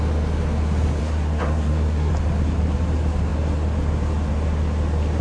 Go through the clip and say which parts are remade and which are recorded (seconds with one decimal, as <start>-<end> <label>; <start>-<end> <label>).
0.0-1.0 recorded; 1.0-2.1 remade; 2.1-5.2 recorded